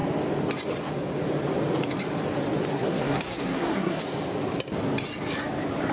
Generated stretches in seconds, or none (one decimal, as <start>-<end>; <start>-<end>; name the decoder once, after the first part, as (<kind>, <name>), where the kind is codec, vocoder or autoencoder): 2.7-4.0 (codec, SNAC)